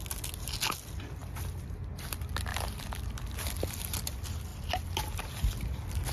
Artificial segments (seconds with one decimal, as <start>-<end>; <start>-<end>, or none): none